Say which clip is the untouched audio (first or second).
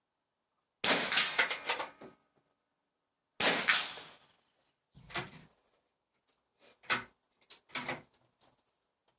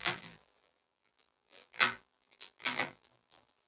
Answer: first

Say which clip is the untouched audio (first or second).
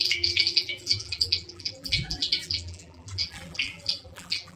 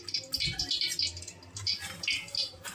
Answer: second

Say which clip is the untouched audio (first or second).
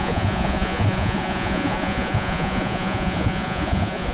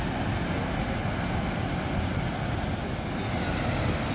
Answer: second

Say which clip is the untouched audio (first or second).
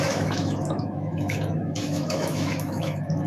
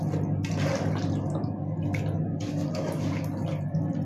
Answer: second